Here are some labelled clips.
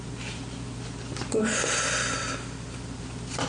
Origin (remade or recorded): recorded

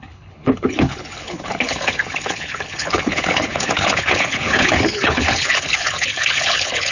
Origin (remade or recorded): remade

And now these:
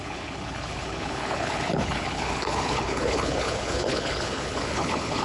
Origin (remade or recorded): remade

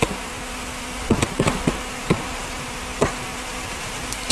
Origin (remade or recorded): recorded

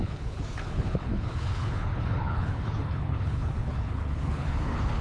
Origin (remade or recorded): remade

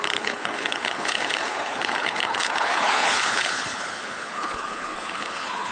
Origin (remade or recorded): remade